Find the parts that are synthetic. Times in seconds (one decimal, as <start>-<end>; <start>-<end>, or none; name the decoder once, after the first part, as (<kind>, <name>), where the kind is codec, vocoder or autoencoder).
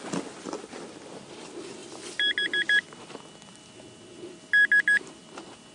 none